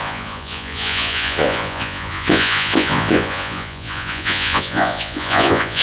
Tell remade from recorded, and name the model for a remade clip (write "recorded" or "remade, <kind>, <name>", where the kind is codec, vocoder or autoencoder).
remade, vocoder, Vocos